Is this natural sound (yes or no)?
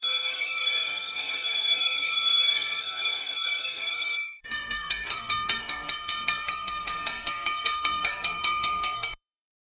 no